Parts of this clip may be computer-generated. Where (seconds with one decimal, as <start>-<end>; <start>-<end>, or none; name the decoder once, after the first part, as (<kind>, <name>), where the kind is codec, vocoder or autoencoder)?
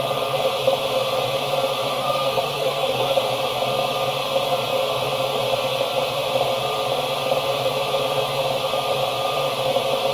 1.9-3.2 (codec, SNAC)